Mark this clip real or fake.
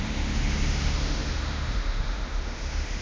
fake